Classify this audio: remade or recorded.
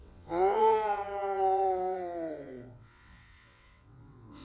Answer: remade